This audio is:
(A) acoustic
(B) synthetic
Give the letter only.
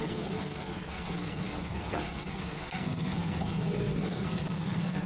B